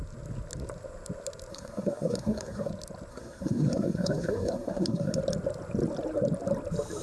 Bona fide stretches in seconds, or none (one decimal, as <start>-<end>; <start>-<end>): 0.0-1.5; 2.7-3.1; 5.2-7.0